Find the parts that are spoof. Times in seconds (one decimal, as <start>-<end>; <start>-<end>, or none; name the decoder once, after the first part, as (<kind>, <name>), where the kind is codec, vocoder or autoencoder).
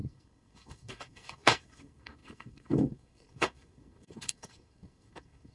0.0-5.5 (codec, SNAC)